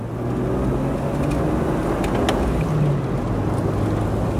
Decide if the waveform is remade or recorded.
recorded